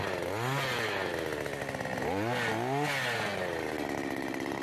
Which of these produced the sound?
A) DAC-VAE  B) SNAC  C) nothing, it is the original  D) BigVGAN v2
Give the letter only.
C